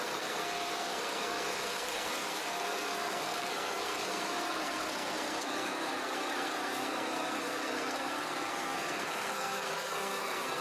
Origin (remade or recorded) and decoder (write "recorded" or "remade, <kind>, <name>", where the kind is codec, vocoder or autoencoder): remade, codec, SNAC